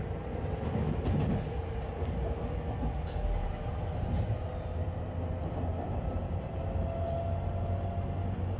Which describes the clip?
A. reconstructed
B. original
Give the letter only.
B